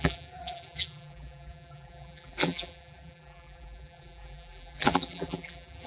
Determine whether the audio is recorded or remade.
remade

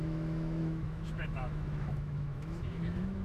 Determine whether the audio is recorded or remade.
remade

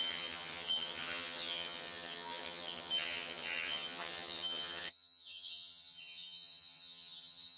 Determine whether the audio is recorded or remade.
remade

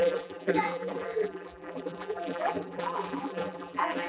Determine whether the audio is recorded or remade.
remade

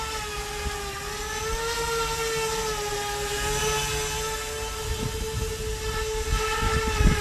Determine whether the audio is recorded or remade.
recorded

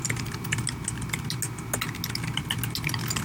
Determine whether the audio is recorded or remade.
recorded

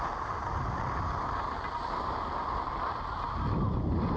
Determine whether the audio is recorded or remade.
recorded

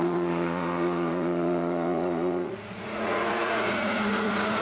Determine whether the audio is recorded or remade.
remade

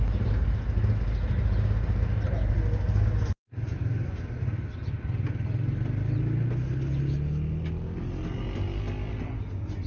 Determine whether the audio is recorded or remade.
recorded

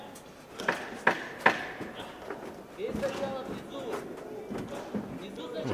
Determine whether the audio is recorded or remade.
recorded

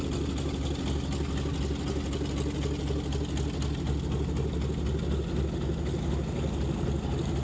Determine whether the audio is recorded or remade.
recorded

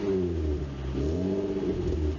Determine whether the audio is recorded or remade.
recorded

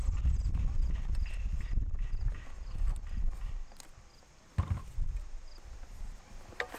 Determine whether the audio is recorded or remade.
recorded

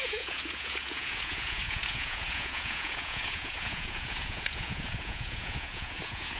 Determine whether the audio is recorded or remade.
remade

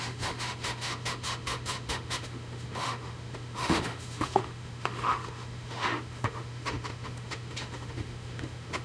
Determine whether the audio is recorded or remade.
remade